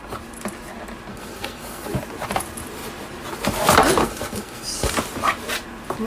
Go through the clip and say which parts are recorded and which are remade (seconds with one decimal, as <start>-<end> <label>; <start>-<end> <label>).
0.0-1.1 recorded; 1.1-1.9 remade; 1.9-4.0 recorded; 4.0-4.9 remade; 4.9-6.1 recorded